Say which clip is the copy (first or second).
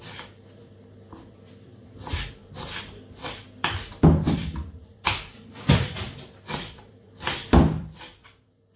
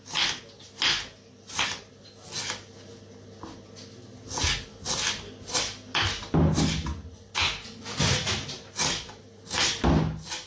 first